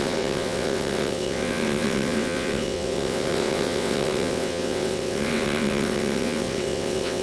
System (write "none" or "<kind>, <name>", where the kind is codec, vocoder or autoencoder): vocoder, WaveNeXt